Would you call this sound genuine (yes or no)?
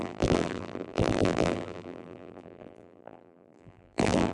no